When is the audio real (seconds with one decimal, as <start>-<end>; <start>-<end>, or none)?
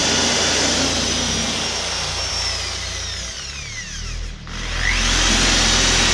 0.0-6.1